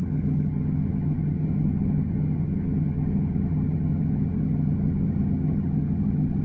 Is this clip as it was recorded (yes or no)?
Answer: no